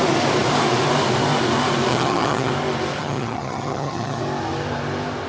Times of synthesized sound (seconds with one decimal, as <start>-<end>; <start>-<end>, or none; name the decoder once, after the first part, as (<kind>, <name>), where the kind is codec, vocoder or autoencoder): 1.9-2.5 (vocoder, HiFi-GAN); 3.0-4.2